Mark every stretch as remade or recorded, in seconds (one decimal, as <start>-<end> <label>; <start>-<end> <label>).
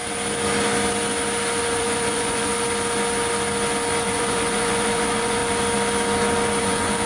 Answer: 0.0-1.8 recorded; 1.8-2.5 remade; 2.5-4.0 recorded; 4.0-5.4 remade; 5.4-6.6 recorded; 6.6-7.1 remade